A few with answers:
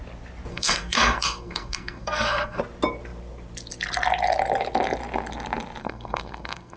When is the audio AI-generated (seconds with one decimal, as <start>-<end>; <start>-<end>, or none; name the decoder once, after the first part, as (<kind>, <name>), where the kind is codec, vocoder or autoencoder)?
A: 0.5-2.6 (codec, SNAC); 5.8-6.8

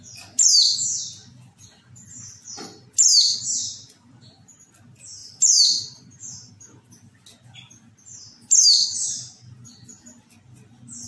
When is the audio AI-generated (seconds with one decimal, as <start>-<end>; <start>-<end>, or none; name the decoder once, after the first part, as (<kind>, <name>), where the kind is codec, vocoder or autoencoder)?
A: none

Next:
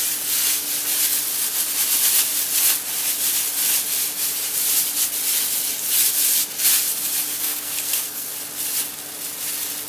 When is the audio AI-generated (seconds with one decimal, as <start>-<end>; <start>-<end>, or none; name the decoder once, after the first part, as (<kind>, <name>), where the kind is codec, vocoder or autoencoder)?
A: 7.3-8.3 (codec, SNAC)

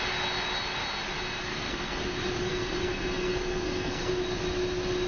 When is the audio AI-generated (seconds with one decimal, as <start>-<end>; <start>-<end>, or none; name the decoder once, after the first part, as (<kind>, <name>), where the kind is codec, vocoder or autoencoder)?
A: 1.5-2.0 (codec, SNAC); 2.4-4.1